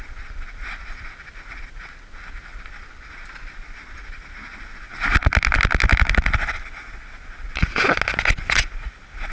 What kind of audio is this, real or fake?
real